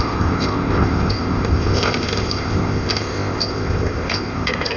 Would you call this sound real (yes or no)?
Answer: no